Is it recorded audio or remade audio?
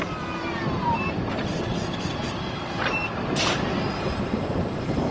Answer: remade